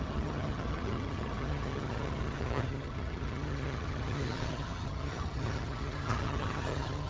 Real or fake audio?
fake